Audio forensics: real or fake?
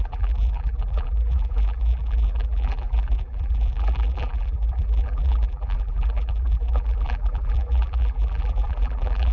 fake